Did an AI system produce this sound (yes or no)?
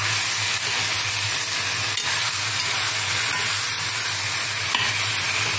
no